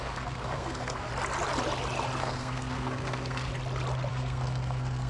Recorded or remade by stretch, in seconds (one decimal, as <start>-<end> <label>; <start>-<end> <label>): 0.0-1.1 remade; 1.1-2.2 recorded; 2.2-3.5 remade; 3.5-4.1 recorded; 4.1-5.1 remade